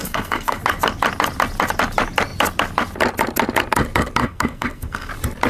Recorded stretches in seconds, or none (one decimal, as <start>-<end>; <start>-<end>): 0.6-4.2; 5.1-5.5